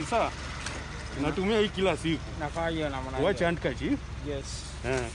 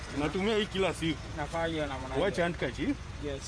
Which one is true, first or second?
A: first